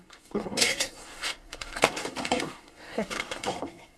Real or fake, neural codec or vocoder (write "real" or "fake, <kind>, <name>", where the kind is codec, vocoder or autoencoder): fake, codec, SNAC